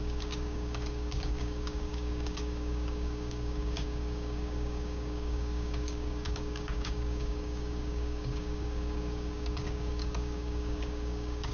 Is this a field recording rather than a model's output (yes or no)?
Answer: no